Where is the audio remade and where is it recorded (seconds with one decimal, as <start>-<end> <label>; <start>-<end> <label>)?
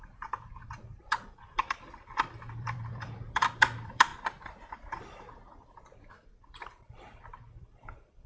0.0-4.1 remade; 4.1-4.7 recorded; 4.7-8.3 remade